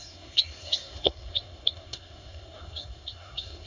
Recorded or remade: remade